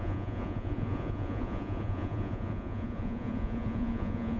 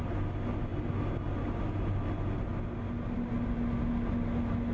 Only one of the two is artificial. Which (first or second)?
first